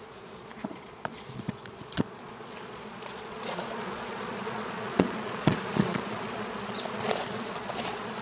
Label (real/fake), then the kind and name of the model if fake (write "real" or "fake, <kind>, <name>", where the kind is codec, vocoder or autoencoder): fake, vocoder, Vocos